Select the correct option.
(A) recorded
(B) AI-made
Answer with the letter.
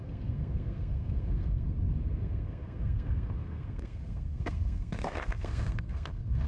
B